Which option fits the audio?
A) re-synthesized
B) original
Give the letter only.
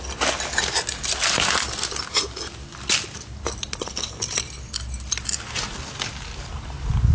B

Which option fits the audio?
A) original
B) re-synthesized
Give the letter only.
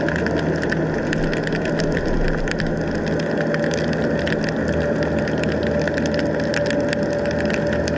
A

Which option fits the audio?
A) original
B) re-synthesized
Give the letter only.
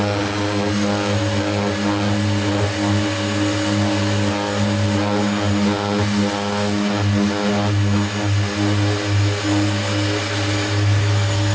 A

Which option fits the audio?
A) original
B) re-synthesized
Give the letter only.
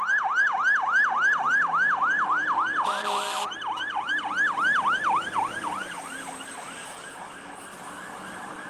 B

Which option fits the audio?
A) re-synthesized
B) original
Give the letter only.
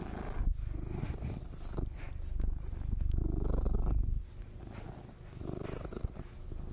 B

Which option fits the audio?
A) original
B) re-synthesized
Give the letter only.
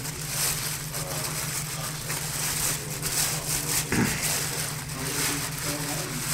A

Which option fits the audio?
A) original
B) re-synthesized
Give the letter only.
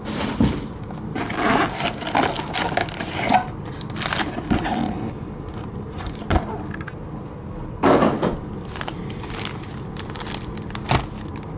A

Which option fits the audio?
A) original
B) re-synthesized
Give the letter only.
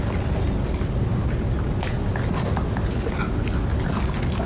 A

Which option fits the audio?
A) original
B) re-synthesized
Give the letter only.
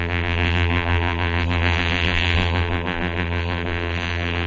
B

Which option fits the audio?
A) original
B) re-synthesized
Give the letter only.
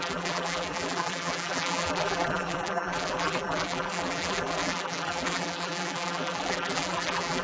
B